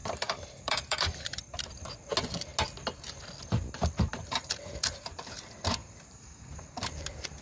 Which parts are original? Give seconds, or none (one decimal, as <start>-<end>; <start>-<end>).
1.4-4.2; 5.1-5.8; 6.6-7.4